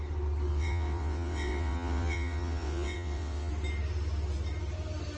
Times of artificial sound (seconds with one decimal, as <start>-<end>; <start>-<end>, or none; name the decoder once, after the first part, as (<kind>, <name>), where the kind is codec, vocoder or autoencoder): 0.5-3.5 (vocoder, WaveNeXt)